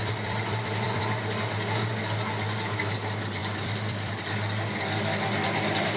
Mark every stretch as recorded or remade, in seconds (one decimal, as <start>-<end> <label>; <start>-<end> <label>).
0.0-1.0 remade; 1.0-3.4 recorded; 3.4-4.1 remade; 4.1-6.0 recorded